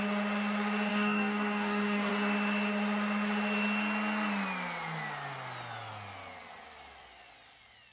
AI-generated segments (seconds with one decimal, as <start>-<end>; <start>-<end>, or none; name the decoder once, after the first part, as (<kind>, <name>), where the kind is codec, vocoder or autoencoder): 0.9-2.1 (codec, DAC)